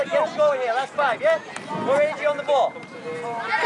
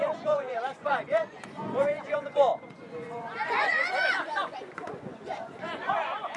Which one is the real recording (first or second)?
first